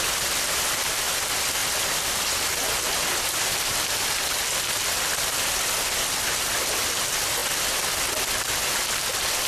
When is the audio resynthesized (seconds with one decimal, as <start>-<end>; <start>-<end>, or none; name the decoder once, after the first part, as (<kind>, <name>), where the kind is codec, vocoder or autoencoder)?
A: none